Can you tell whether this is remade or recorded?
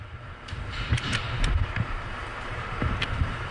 remade